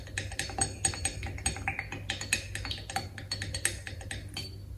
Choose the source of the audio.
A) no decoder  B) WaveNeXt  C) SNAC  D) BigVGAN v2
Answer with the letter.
A